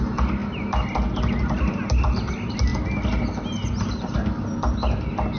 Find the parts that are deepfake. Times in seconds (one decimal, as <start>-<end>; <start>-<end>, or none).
none